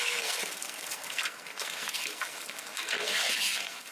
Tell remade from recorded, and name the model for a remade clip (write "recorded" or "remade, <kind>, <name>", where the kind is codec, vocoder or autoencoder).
remade, codec, SNAC